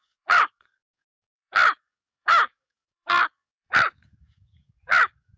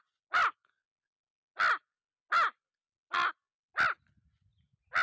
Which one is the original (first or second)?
second